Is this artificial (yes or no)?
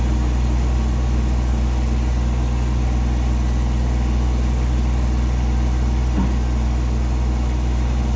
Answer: no